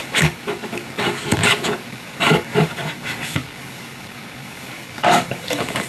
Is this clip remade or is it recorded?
remade